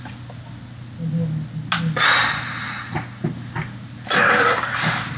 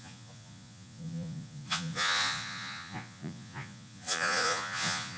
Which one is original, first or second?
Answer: first